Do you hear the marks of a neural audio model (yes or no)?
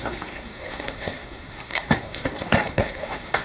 yes